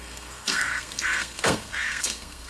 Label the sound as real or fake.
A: fake